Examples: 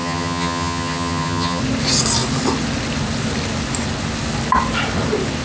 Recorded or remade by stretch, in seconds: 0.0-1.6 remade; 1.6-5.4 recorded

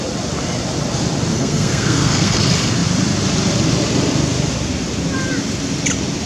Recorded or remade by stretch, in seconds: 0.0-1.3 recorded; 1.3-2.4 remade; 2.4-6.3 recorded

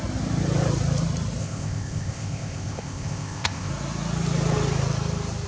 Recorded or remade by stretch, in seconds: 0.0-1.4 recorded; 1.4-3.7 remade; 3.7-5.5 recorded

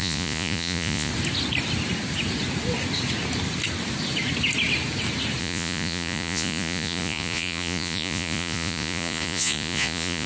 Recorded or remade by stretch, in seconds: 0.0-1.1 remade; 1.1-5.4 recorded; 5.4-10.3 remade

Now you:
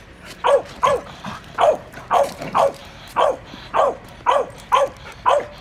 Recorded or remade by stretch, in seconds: 0.0-2.8 remade; 2.8-3.3 recorded; 3.3-5.6 remade

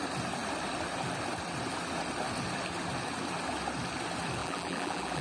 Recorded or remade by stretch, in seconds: 0.0-4.4 recorded; 4.4-5.2 remade